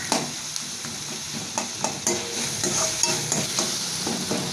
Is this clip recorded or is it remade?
remade